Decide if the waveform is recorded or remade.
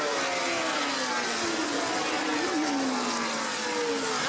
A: recorded